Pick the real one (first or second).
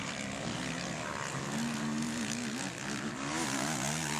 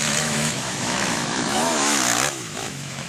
first